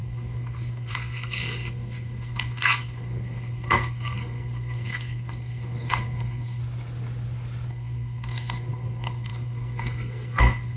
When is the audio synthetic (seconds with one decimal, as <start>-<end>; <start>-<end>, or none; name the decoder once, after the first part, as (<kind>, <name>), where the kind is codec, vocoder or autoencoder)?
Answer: 0.0-6.6 (codec, SNAC); 7.7-10.8

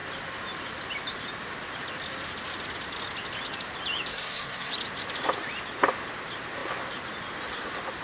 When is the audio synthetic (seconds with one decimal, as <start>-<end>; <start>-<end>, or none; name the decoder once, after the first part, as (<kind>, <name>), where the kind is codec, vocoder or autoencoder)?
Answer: 4.1-4.7 (codec, SNAC)

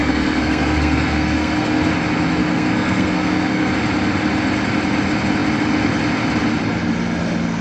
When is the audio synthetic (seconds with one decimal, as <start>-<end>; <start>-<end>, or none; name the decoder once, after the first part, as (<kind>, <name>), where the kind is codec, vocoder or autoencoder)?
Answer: 0.0-1.9 (codec, SNAC); 2.4-3.7

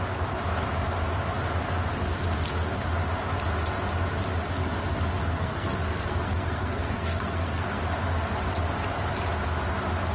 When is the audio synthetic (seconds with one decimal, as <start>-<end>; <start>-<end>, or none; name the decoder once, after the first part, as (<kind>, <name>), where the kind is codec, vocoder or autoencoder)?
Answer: 5.2-7.8 (codec, SNAC)

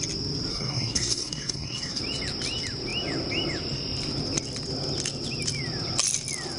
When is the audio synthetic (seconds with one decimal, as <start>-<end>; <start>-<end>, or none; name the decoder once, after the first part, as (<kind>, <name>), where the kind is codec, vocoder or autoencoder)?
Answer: 0.5-2.0 (codec, SNAC)

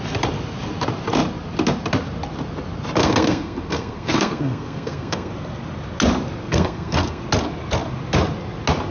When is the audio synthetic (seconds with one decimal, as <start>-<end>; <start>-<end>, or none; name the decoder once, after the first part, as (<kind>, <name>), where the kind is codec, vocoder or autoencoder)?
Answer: 3.0-5.3 (codec, SNAC); 6.4-7.2